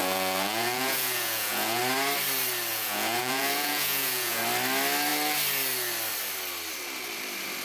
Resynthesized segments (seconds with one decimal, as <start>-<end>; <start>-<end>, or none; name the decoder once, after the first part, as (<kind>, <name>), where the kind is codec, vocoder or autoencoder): 0.0-1.8 (vocoder, Vocos); 2.7-4.4